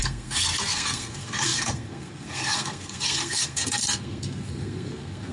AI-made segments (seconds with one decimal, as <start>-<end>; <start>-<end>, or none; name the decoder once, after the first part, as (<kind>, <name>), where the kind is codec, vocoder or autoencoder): 0.0-5.3 (codec, SNAC)